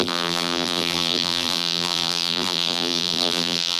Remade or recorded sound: remade